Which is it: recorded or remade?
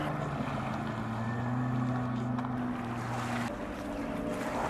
recorded